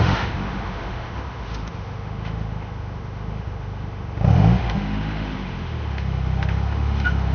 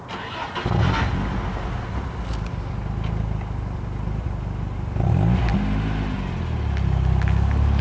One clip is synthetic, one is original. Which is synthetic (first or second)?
first